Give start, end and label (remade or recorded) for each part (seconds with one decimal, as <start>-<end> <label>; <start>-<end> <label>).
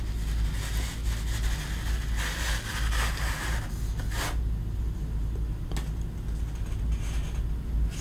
0.0-8.0 recorded